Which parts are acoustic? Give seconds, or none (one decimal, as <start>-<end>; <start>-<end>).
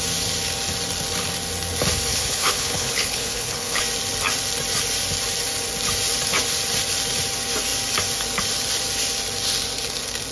0.0-2.1; 3.8-10.3